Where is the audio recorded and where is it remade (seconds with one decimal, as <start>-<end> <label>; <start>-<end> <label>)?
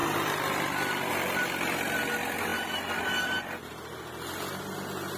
0.0-5.2 recorded